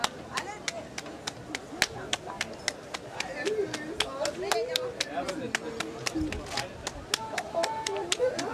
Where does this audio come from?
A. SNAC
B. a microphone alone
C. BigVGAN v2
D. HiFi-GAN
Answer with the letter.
B